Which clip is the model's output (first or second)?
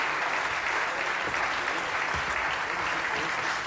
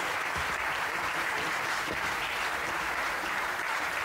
second